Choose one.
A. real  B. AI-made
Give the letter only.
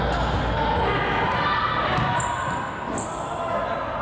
A